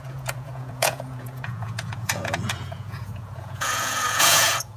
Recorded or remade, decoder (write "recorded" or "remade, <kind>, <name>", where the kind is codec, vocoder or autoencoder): remade, vocoder, Vocos